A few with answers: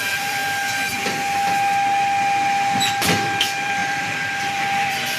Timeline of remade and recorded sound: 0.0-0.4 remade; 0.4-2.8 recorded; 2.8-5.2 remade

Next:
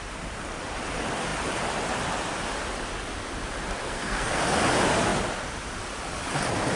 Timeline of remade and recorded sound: 0.0-3.8 recorded; 3.8-4.4 remade; 4.4-6.8 recorded

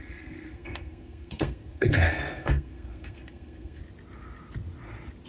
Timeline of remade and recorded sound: 0.0-3.8 remade; 3.8-5.3 recorded

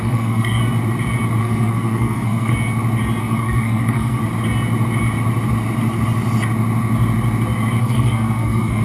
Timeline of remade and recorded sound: 0.0-0.6 remade; 0.6-1.4 recorded; 1.4-2.5 remade; 2.5-3.2 recorded; 3.2-4.2 remade; 4.2-7.8 recorded; 7.8-8.8 remade

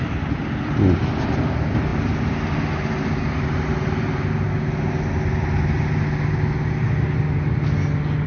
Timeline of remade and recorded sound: 0.0-8.3 recorded

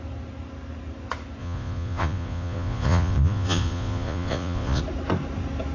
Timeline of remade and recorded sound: 0.0-1.4 recorded; 1.4-4.8 remade; 4.8-5.7 recorded

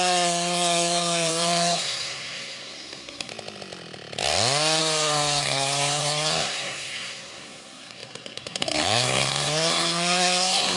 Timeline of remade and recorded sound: 0.0-3.3 remade; 3.3-4.8 recorded; 4.8-10.8 remade

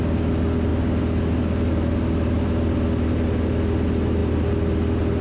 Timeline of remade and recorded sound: 0.0-5.2 recorded